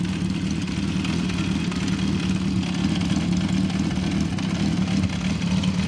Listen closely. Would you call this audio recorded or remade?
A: recorded